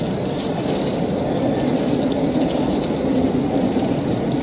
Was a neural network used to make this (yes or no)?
no